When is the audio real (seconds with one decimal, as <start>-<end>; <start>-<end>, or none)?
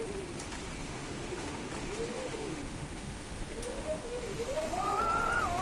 0.0-0.9; 1.7-2.1; 5.0-5.6